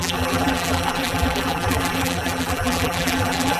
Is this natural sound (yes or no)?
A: no